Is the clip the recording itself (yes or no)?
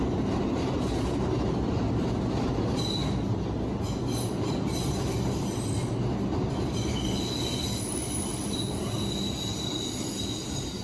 yes